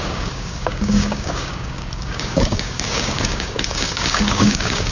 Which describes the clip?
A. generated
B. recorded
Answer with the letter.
A